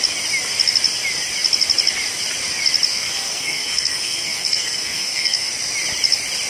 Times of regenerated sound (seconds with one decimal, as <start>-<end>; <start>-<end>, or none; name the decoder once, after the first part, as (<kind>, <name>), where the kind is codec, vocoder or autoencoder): 2.9-5.5 (codec, SNAC)